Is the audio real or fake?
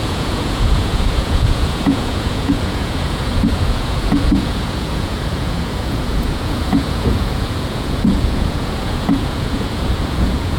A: fake